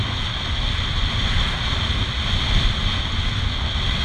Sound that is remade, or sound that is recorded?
recorded